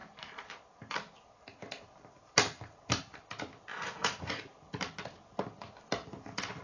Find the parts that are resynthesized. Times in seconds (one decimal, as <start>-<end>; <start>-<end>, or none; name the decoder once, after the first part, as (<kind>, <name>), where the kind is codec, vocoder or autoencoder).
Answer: 3.7-4.4 (vocoder, Vocos)